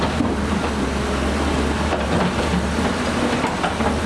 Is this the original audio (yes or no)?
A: yes